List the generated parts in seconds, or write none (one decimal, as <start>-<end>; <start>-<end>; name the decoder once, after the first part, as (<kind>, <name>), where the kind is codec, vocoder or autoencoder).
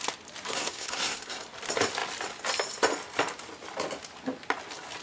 0.5-1.4 (codec, SNAC)